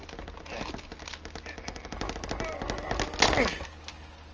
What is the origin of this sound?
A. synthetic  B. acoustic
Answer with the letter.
B